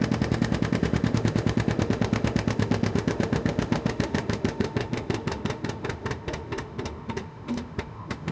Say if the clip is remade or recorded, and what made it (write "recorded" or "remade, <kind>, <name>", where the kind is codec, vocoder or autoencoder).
remade, autoencoder, DAC-VAE